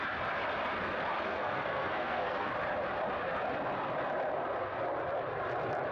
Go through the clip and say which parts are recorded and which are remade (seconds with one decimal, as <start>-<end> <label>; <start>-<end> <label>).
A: 0.0-1.3 recorded; 1.3-2.5 remade; 2.5-5.9 recorded